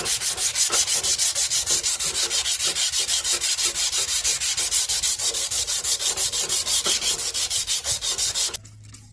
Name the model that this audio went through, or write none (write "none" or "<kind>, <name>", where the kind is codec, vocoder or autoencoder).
none